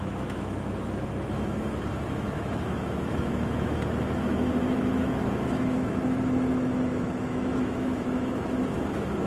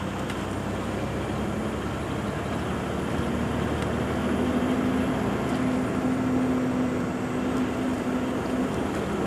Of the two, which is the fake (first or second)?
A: first